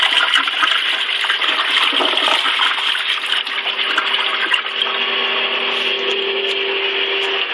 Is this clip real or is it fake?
real